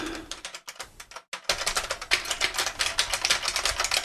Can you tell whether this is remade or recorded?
recorded